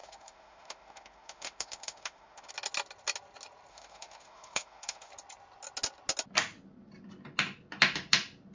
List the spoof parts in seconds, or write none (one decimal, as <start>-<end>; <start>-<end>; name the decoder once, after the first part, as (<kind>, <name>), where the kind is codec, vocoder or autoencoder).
0.0-2.5 (autoencoder, DAC-VAE); 3.7-5.1